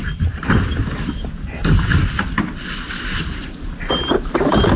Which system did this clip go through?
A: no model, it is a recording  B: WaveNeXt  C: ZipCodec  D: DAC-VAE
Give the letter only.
A